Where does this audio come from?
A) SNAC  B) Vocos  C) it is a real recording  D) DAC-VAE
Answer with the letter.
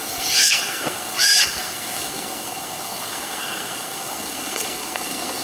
A